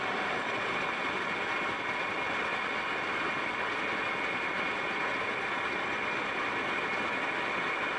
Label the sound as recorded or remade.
recorded